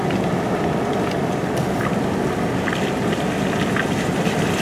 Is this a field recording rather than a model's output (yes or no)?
yes